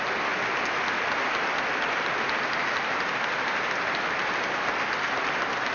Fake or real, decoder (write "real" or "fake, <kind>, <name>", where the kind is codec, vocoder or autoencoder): real